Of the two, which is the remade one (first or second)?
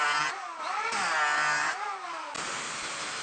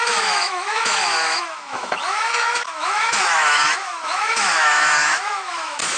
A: second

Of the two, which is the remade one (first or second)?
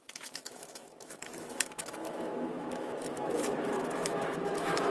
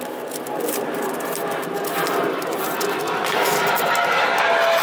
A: first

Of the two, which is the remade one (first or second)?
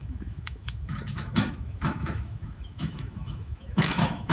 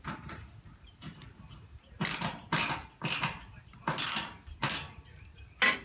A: first